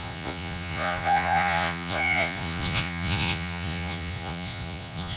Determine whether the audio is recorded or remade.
remade